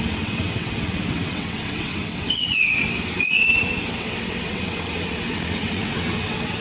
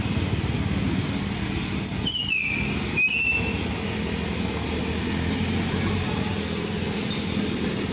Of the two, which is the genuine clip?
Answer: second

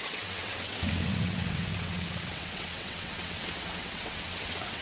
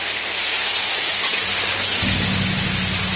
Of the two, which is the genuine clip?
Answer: second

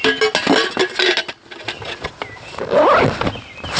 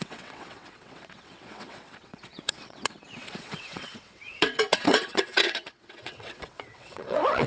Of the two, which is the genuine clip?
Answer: first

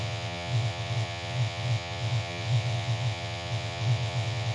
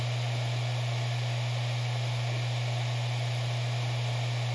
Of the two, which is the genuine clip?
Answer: second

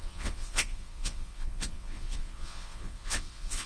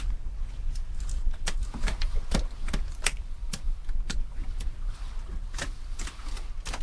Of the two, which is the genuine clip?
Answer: second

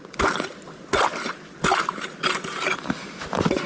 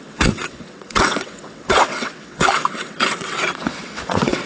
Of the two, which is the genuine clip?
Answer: first